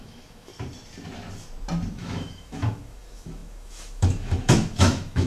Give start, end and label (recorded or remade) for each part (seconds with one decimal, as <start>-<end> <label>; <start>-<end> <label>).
0.0-0.5 remade; 0.5-1.9 recorded; 1.9-5.3 remade